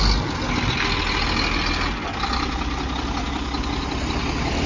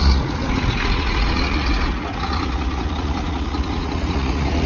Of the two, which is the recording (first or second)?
first